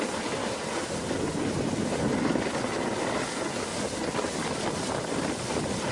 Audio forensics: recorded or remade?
recorded